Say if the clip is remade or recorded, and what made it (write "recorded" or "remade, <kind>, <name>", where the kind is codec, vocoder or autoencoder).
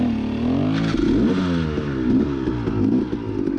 recorded